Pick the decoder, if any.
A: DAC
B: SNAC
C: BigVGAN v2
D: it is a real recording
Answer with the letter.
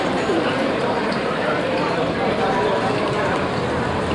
C